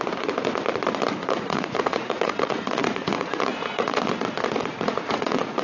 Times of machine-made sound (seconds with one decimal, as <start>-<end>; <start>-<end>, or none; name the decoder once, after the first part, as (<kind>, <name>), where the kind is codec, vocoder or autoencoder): 1.2-4.0 (vocoder, Vocos); 4.6-5.6